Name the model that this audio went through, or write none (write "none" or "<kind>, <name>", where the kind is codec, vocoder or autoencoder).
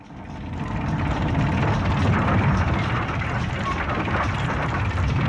none